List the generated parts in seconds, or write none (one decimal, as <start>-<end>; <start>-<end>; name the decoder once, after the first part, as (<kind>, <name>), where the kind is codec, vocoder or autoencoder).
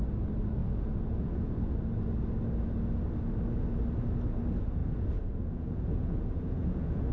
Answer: 0.6-1.6 (vocoder, Vocos); 4.8-7.1